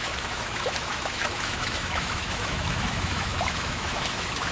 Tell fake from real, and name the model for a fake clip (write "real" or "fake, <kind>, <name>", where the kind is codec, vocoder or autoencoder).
fake, autoencoder, DAC-VAE